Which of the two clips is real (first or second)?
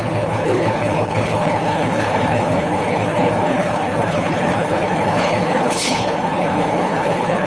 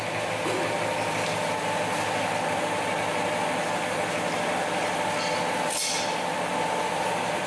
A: second